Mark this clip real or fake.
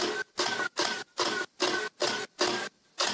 real